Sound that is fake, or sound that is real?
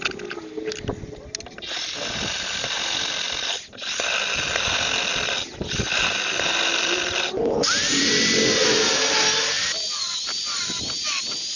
real